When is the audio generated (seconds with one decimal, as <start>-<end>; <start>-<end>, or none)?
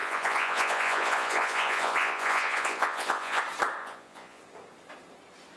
0.0-3.4; 3.8-4.4